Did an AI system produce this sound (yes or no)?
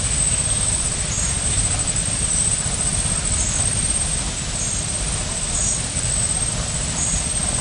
no